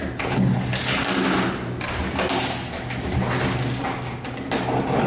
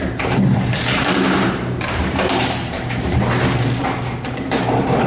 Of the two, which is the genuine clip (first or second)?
first